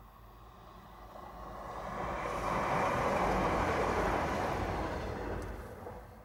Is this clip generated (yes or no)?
no